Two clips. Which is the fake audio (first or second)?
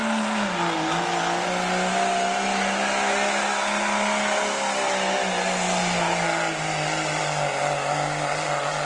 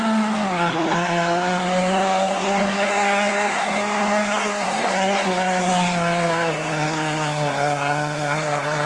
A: second